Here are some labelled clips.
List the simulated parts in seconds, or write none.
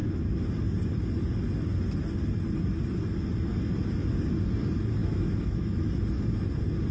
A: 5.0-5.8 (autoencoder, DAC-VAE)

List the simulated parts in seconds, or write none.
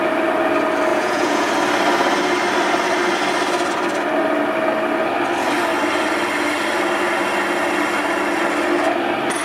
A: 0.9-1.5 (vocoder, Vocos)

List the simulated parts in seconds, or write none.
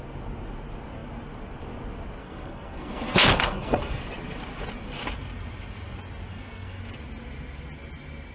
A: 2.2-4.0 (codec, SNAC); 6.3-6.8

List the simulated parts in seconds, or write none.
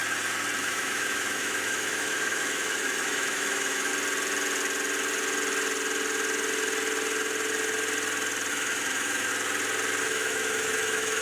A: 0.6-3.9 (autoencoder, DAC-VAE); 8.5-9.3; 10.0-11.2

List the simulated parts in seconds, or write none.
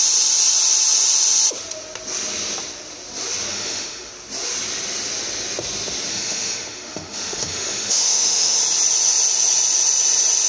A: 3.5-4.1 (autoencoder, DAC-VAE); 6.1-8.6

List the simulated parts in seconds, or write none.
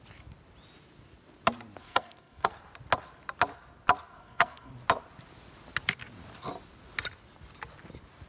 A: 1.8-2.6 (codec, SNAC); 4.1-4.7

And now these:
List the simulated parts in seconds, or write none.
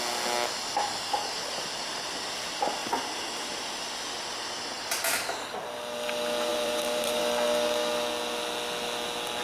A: 2.8-3.6 (vocoder, BigVGAN v2); 6.5-7.2